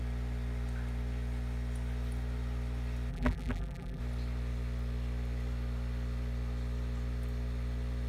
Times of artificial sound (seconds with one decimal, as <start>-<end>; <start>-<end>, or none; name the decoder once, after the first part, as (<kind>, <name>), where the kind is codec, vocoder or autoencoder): 3.1-4.0 (vocoder, BigVGAN v2)